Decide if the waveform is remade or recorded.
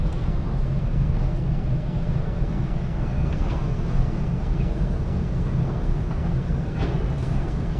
remade